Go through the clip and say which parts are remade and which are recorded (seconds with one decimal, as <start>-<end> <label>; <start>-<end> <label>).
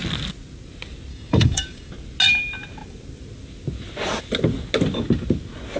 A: 0.0-1.1 recorded; 1.1-1.9 remade; 1.9-5.8 recorded